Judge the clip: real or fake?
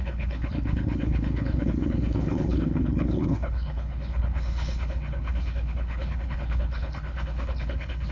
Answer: fake